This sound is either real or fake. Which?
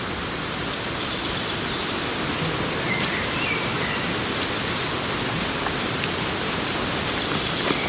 fake